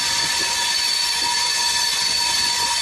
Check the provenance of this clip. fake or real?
fake